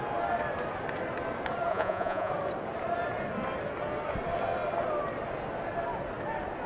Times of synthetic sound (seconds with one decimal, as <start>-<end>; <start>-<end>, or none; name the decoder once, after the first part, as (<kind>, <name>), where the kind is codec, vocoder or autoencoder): 1.7-2.3 (vocoder, Vocos)